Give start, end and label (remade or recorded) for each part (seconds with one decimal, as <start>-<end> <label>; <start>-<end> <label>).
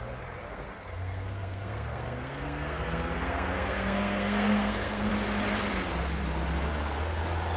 0.0-0.5 recorded; 0.5-5.1 remade; 5.1-7.6 recorded